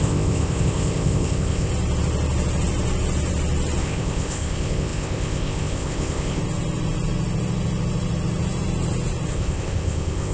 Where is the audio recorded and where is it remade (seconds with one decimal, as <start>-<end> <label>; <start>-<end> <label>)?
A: 0.0-1.7 remade; 1.7-3.8 recorded; 3.8-6.4 remade; 6.4-9.3 recorded; 9.3-10.3 remade